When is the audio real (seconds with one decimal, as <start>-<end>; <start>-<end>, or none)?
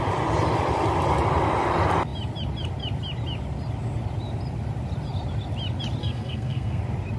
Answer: 0.0-6.0; 6.8-7.2